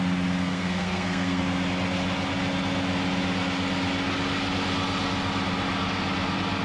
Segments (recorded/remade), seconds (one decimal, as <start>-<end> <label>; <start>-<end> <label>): 0.0-0.4 recorded; 0.4-1.4 remade; 1.4-6.6 recorded